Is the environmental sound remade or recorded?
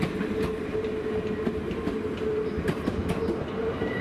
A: recorded